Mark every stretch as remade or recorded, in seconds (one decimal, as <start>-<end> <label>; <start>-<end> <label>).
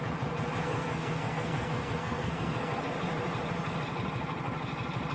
0.0-0.6 recorded; 0.6-2.8 remade; 2.8-5.1 recorded